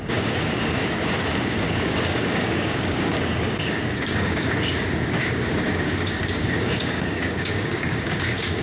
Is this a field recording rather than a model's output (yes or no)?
no